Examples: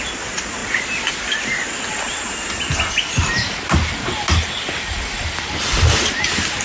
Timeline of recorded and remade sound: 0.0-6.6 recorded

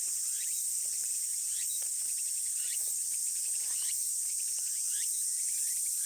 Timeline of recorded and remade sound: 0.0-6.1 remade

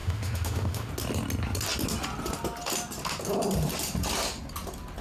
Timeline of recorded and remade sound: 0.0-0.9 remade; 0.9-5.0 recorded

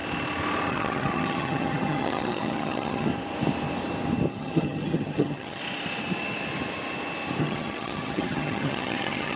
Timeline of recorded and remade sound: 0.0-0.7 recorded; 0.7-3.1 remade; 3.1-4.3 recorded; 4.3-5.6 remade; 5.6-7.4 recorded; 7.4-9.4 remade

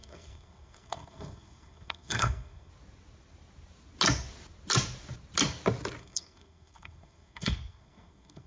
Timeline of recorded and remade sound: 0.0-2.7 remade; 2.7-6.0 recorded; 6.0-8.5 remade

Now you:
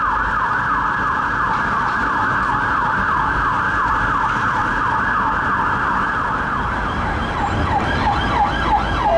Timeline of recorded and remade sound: 0.0-4.6 remade; 4.6-9.2 recorded

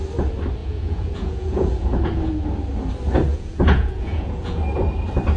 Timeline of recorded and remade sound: 0.0-0.6 recorded; 0.6-2.3 remade; 2.3-3.3 recorded; 3.3-4.6 remade; 4.6-5.4 recorded

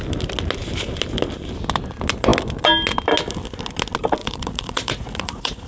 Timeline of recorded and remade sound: 0.0-4.2 recorded; 4.2-5.7 remade